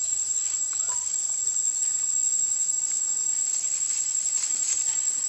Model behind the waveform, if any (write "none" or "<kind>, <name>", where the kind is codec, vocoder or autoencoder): none